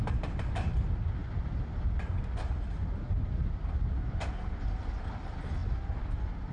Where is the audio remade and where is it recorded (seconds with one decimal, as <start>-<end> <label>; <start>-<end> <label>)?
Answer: 0.0-6.5 recorded